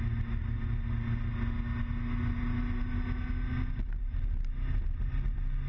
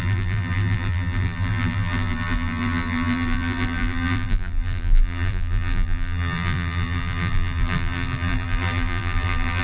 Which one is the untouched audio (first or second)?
first